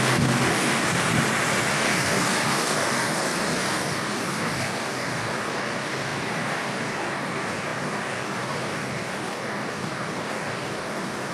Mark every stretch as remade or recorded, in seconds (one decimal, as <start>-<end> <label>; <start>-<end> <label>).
0.0-1.1 remade; 1.1-1.7 recorded; 1.7-11.3 remade

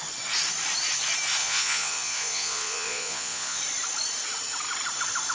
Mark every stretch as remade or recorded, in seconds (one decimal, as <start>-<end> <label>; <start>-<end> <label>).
0.0-1.4 recorded; 1.4-3.6 remade; 3.6-5.3 recorded

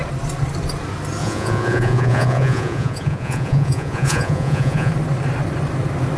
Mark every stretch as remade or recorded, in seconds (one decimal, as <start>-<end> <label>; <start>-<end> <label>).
0.0-1.2 recorded; 1.2-4.9 remade; 4.9-6.2 recorded